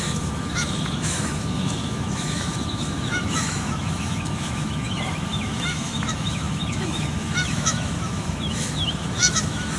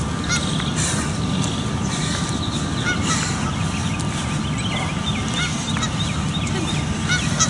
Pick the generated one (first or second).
first